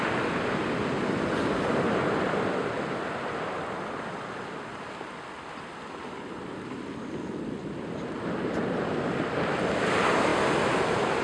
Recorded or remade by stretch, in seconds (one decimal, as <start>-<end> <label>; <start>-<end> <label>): 0.0-11.2 recorded